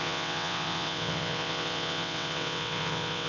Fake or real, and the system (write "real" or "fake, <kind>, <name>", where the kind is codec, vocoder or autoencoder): fake, vocoder, WaveNeXt